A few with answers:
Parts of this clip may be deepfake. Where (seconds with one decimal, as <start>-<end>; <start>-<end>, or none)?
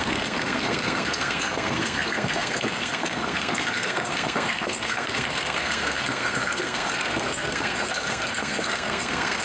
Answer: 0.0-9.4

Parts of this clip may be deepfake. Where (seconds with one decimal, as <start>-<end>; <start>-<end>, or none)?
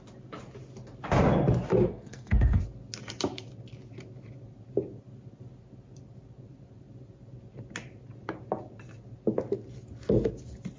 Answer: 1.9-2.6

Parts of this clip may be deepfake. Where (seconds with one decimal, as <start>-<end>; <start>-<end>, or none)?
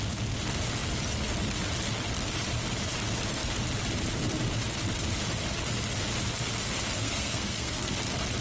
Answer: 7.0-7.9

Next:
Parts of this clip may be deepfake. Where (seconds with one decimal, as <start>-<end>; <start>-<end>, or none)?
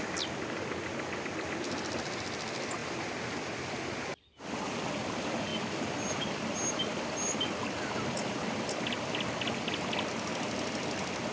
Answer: none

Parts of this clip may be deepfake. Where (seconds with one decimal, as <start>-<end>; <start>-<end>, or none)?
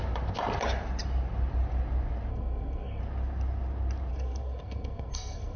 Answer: 2.3-3.0; 4.1-5.6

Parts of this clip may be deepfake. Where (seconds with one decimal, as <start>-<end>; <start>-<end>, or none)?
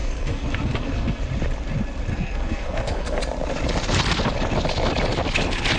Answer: 0.0-1.2; 2.1-3.2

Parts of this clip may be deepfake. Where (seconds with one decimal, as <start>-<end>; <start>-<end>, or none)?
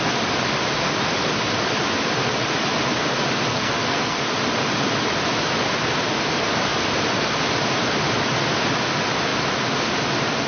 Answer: 3.5-4.2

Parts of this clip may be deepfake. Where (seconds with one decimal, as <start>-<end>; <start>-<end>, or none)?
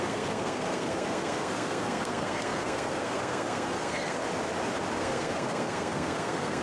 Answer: 0.0-4.2; 5.0-6.6